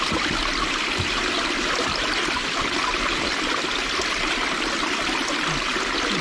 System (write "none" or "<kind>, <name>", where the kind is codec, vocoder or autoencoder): none